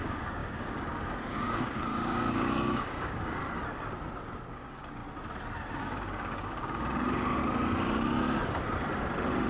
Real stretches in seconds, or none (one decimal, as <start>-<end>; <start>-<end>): 3.4-4.5; 5.0-5.8; 7.4-9.5